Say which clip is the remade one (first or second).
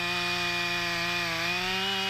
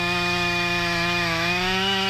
second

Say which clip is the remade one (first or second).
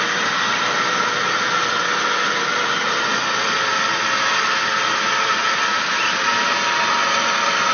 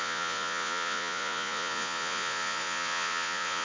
second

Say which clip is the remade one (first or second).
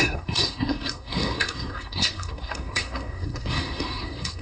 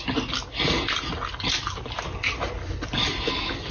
first